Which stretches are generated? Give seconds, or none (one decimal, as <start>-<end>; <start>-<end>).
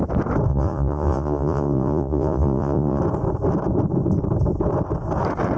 0.5-3.0